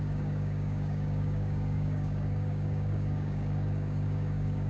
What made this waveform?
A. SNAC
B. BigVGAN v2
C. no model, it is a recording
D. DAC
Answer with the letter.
D